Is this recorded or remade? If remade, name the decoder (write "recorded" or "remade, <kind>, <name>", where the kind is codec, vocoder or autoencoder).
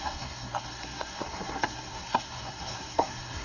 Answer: remade, codec, SNAC